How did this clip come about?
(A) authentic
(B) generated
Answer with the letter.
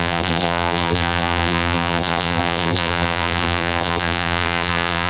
B